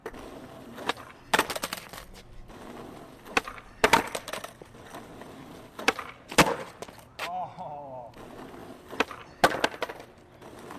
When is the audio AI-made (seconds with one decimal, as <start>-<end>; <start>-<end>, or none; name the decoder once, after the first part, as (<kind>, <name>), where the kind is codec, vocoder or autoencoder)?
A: none